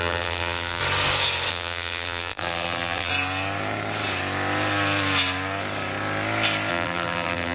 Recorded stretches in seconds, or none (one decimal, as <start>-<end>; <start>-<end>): 0.8-1.5; 3.1-6.7